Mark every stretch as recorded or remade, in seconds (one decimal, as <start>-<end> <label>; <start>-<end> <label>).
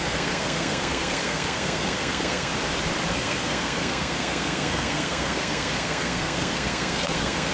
0.0-2.5 remade; 2.5-3.1 recorded; 3.1-7.5 remade